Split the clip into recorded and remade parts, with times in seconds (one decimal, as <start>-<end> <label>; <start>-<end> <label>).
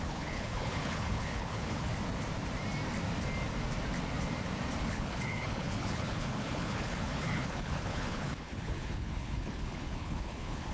0.0-1.9 remade; 1.9-4.9 recorded; 4.9-10.7 remade